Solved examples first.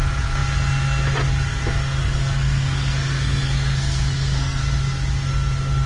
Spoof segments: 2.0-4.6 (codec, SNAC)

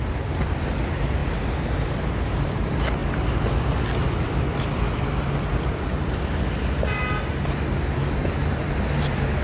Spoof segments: none

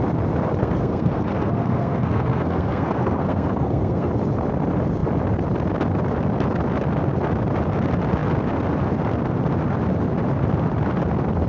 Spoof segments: 0.6-4.1 (codec, SNAC)

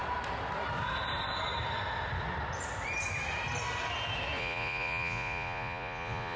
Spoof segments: 4.4-6.4 (vocoder, Vocos)

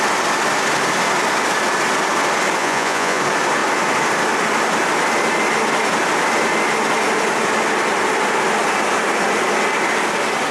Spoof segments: 2.6-3.2 (vocoder, Vocos)

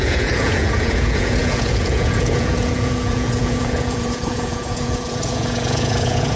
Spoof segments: 0.0-6.4 (vocoder, Vocos)

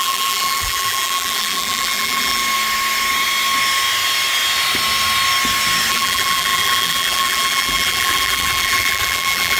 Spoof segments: 0.0-2.4 (vocoder, BigVGAN v2); 5.9-9.6

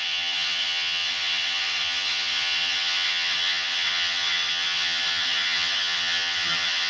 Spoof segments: 0.0-6.9 (vocoder, HiFi-GAN)